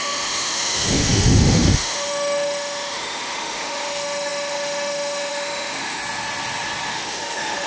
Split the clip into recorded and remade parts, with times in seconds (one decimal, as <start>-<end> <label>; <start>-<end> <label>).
0.0-6.0 remade; 6.0-6.9 recorded; 6.9-7.7 remade